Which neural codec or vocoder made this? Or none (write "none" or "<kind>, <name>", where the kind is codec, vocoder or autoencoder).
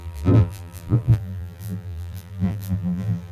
vocoder, BigVGAN v2